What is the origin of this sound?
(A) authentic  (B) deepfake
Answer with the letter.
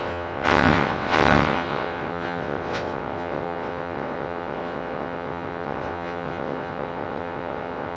B